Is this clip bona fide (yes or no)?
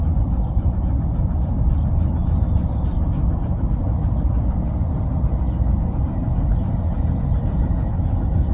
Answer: yes